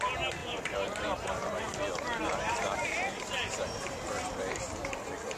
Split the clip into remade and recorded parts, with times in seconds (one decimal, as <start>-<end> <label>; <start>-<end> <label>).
0.0-0.4 recorded; 0.4-1.6 remade; 1.6-2.3 recorded; 2.3-4.5 remade; 4.5-5.4 recorded